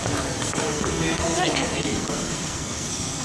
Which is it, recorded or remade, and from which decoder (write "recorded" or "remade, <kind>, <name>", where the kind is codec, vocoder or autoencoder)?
remade, codec, SNAC